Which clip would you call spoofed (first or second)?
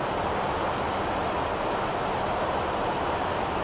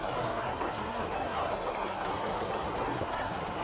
second